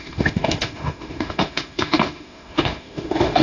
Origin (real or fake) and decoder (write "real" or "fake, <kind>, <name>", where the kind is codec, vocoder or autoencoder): fake, autoencoder, DAC-VAE